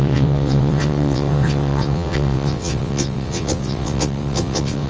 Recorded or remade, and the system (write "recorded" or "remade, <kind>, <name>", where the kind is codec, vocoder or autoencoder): remade, vocoder, WaveNeXt